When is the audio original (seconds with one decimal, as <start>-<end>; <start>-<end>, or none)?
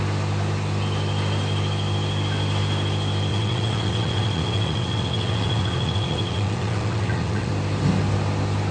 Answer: 0.0-3.3; 7.5-8.7